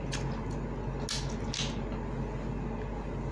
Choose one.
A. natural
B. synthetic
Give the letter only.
A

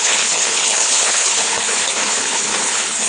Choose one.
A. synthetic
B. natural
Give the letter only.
A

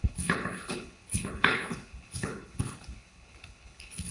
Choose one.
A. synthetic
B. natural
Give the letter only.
A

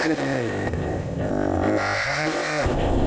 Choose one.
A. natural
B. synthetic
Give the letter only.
B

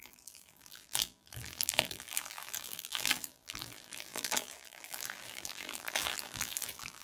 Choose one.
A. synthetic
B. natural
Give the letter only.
A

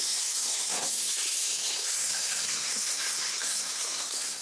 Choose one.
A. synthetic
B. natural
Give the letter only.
A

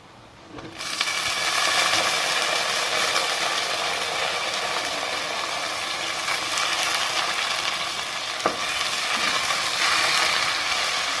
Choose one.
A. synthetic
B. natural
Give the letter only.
B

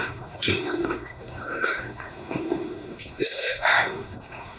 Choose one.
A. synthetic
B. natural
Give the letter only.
A